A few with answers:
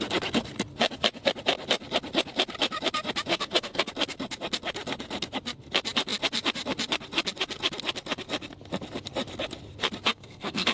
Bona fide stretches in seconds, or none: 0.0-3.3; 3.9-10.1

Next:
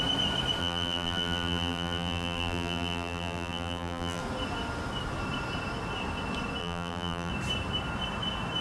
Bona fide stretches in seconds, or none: 0.0-0.6; 4.2-6.6; 7.3-8.6

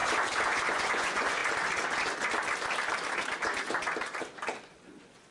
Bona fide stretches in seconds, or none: 0.0-0.7; 1.4-4.6

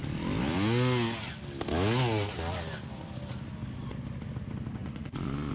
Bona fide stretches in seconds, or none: 0.0-4.8

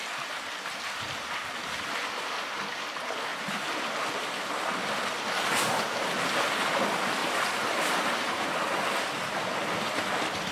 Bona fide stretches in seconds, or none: 0.0-3.3; 4.5-7.2; 8.5-10.5

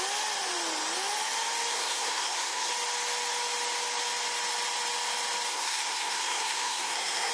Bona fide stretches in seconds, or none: 0.0-1.7; 2.7-5.5

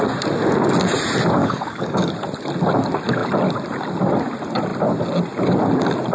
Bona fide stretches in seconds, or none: 0.0-1.4; 2.1-6.1